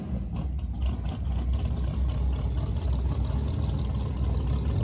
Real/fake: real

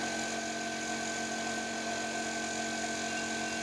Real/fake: real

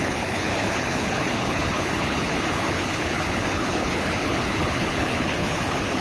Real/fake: fake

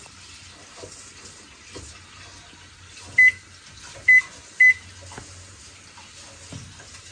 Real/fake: real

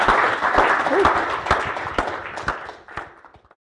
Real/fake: real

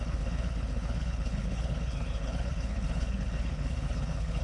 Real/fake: fake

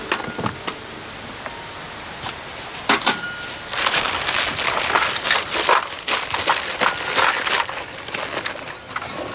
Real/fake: real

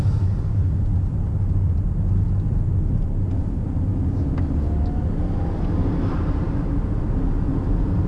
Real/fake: real